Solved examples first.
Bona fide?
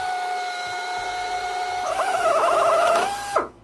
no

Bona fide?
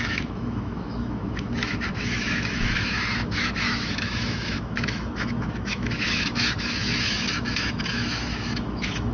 no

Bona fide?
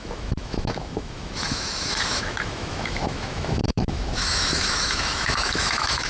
no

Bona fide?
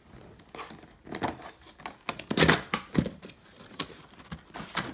yes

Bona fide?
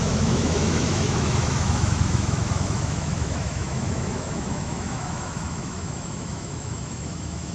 no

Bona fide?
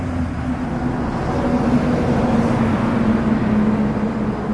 yes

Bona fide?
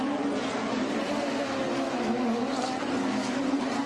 yes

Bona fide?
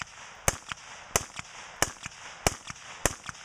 yes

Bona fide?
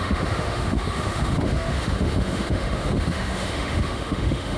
no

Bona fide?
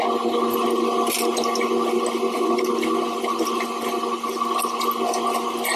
yes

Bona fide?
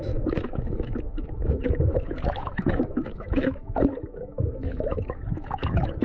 no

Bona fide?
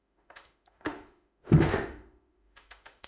no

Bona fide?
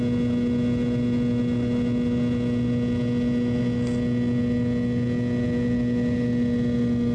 yes